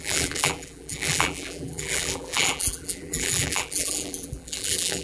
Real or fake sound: fake